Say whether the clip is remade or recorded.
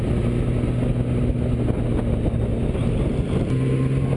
recorded